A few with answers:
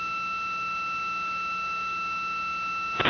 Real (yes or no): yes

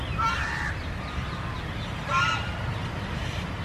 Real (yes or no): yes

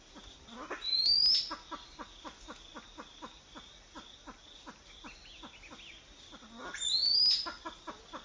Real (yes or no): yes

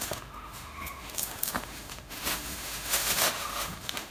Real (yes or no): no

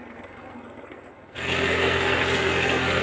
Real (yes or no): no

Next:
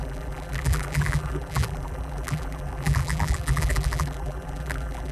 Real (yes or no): no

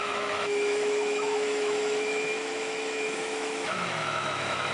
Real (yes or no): no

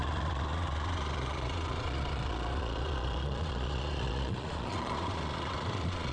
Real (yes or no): no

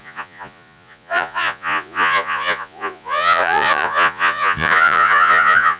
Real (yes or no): no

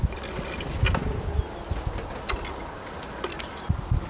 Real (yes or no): yes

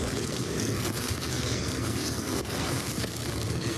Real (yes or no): no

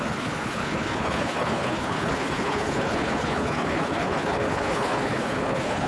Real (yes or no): no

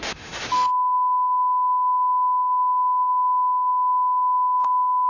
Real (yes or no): no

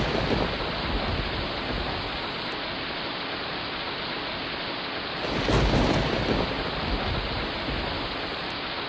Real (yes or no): yes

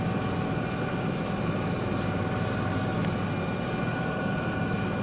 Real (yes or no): yes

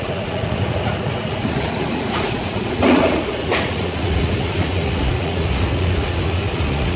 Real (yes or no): no